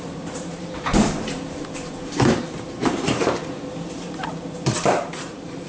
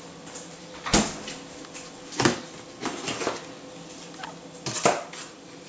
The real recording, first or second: second